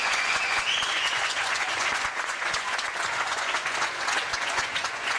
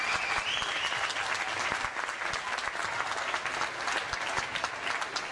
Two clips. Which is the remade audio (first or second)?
first